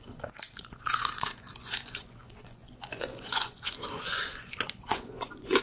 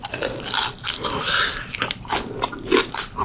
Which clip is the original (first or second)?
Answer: second